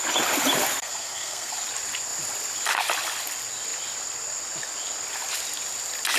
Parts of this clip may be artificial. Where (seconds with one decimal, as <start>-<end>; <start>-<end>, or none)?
0.8-1.5